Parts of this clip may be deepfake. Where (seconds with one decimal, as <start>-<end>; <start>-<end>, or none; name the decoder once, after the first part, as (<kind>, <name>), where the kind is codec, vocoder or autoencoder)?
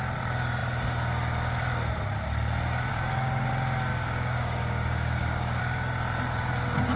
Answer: 2.9-3.5 (codec, DAC); 3.9-5.6